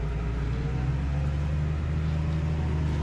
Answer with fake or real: real